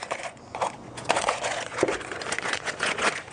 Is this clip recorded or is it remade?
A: remade